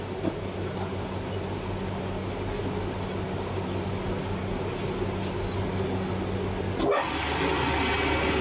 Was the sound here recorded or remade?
recorded